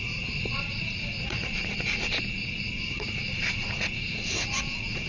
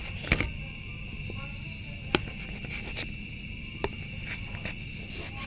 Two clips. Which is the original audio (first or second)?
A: second